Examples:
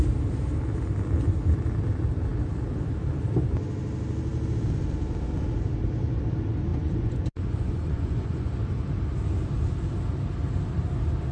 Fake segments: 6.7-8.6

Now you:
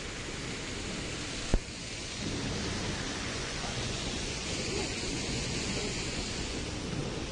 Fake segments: 1.5-2.2; 3.1-6.6